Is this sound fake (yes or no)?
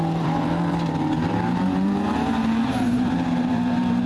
yes